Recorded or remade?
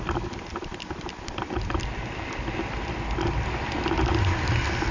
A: recorded